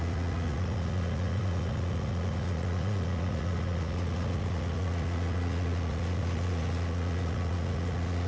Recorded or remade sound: remade